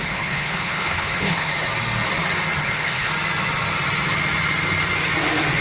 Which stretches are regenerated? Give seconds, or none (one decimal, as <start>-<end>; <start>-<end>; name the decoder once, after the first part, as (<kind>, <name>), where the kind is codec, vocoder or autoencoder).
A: 0.0-1.5 (codec, HILCodec); 2.6-3.1